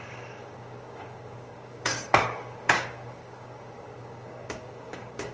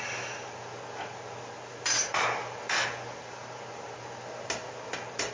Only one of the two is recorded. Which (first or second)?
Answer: second